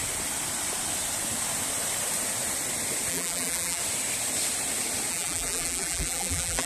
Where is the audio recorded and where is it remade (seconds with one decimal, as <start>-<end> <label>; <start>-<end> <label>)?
0.0-3.1 recorded; 3.1-3.8 remade; 3.8-5.1 recorded; 5.1-6.7 remade